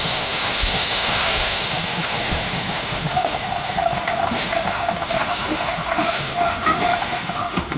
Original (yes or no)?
no